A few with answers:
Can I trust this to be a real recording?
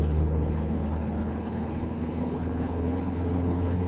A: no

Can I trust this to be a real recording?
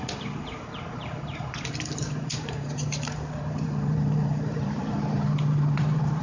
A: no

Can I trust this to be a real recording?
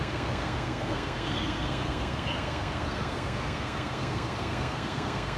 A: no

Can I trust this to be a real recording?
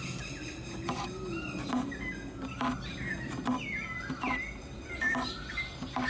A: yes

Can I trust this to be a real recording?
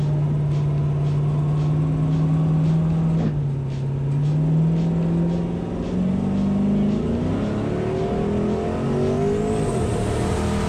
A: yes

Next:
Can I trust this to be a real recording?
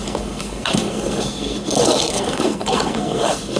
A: no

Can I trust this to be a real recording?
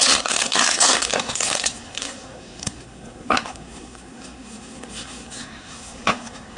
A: no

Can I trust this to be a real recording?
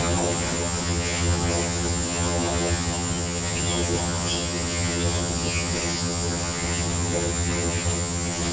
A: no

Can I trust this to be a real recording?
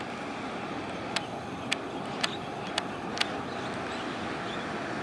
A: yes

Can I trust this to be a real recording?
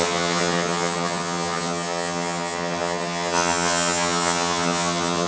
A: no